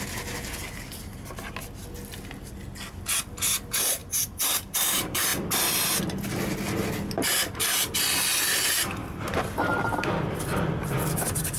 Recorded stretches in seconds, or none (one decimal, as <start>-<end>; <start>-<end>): 0.0-9.0; 11.2-11.6

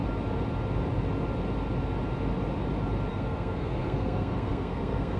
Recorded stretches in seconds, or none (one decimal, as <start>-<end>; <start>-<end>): 0.0-3.1

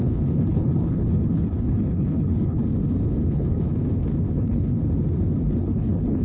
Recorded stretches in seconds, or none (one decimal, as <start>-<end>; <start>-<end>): 2.6-3.3; 3.7-4.3; 4.8-5.6

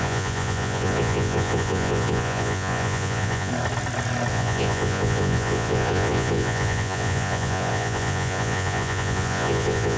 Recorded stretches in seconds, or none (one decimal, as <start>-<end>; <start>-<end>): 3.5-4.3

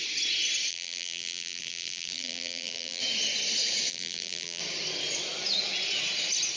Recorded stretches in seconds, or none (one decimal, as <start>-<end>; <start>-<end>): 0.0-0.7; 3.0-3.9; 4.6-6.6

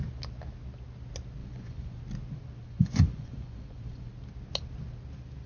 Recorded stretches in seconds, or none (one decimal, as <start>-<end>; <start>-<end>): 0.0-1.4; 2.0-2.6; 4.1-5.5

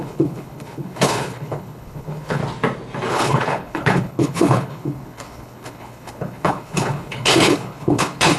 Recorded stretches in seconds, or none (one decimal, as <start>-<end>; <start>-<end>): 2.4-3.1